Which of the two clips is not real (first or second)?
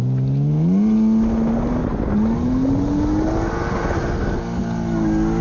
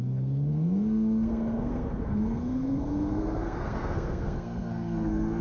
second